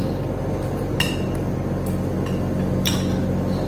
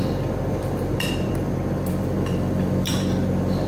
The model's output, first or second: second